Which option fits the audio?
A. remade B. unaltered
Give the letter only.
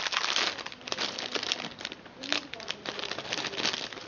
B